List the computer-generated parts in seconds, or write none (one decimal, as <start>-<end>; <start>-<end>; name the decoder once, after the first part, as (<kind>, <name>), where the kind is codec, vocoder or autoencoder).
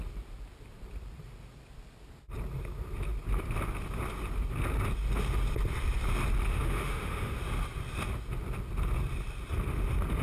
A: 6.5-7.4 (autoencoder, DAC-VAE)